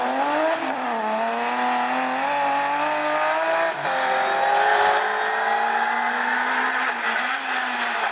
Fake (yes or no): no